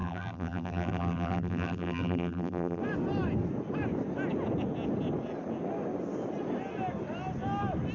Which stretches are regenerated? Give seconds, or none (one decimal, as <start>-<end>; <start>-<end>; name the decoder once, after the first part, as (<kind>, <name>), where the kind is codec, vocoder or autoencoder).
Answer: 0.0-2.8 (vocoder, BigVGAN v2)